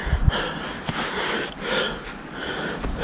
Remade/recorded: recorded